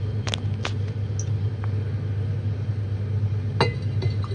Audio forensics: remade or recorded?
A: recorded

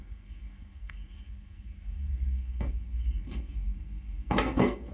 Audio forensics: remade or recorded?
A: remade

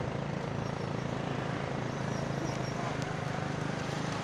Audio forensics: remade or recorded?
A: remade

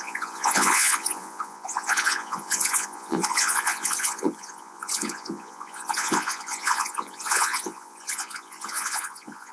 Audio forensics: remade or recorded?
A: remade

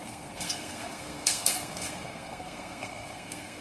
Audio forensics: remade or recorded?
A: remade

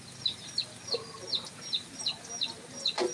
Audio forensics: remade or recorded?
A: recorded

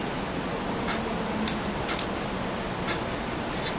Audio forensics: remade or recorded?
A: recorded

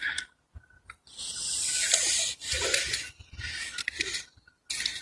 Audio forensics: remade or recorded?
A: recorded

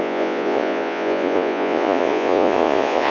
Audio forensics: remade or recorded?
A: remade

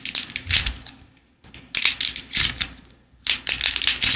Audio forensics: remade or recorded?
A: recorded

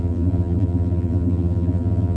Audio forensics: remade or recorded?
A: remade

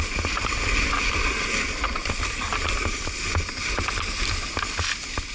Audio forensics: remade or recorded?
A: recorded